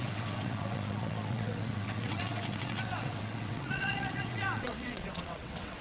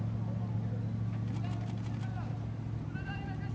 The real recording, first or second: second